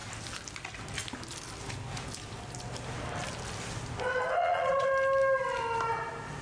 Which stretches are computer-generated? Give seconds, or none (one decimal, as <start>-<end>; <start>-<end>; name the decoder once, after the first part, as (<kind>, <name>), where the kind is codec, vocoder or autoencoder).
4.4-4.9 (vocoder, Vocos)